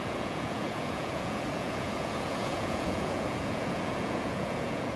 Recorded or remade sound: remade